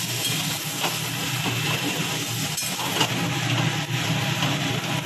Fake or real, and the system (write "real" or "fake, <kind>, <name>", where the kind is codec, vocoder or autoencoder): real